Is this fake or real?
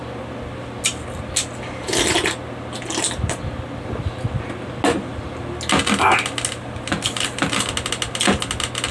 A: real